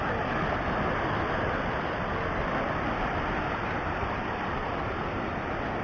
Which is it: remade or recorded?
remade